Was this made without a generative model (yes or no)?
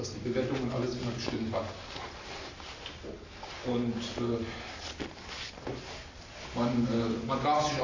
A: yes